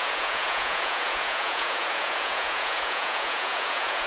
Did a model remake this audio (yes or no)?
yes